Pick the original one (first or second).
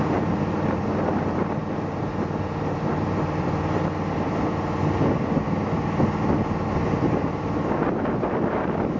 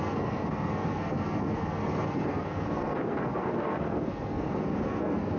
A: first